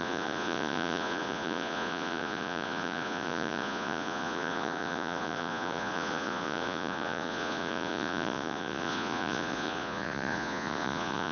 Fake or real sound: fake